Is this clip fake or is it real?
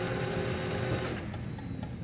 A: real